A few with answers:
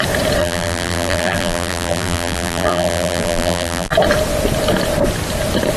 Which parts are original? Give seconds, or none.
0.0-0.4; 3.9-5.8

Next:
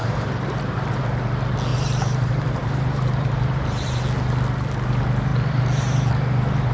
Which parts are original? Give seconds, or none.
1.0-1.7; 4.0-6.7

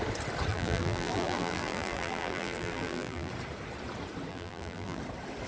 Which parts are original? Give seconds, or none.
0.0-0.5; 3.3-4.3; 5.0-5.5

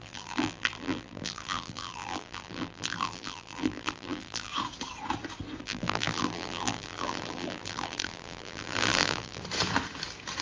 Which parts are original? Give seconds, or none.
4.5-5.6; 9.4-10.4